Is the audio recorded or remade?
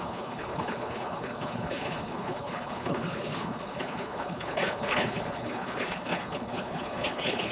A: remade